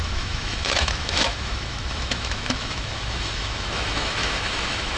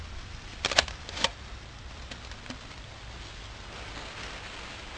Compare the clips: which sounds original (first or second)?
second